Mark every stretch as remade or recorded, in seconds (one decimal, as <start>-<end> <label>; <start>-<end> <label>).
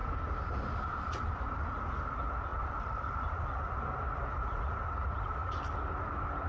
0.0-1.5 remade; 1.5-2.5 recorded; 2.5-4.6 remade; 4.6-6.5 recorded